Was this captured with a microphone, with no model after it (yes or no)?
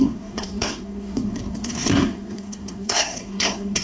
no